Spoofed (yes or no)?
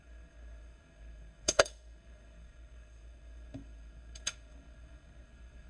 yes